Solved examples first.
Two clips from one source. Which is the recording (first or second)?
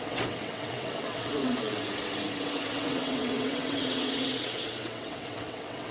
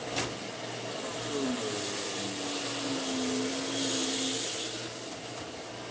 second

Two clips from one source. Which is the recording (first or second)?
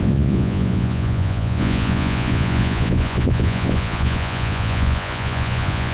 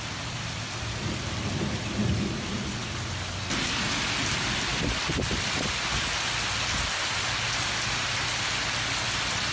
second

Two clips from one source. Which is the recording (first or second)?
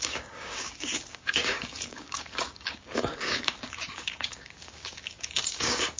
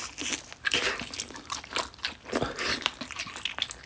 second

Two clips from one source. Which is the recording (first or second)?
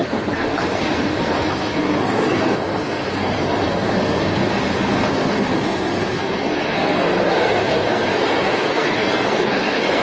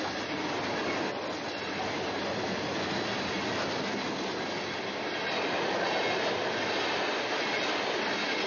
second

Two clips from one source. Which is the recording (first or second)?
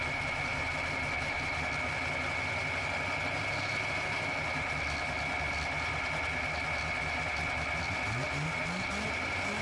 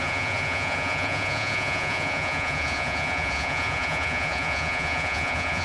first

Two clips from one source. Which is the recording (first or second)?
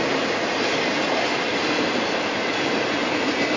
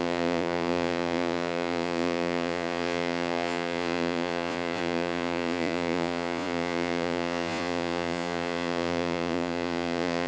first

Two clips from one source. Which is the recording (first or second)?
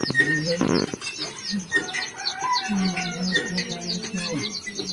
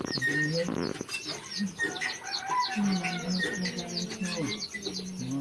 second